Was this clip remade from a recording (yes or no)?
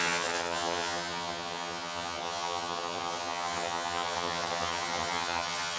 yes